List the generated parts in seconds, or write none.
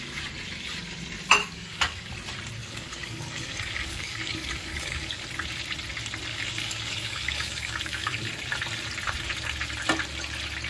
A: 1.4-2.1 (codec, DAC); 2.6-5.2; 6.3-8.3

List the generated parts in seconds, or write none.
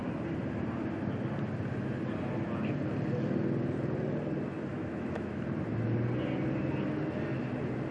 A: 4.7-5.4 (autoencoder, DAC-VAE)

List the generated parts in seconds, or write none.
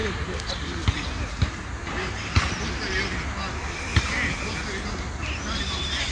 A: none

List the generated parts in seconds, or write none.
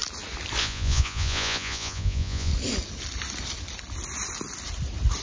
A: 0.6-2.5 (vocoder, Vocos)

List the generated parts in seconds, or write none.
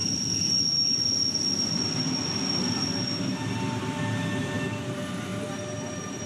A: none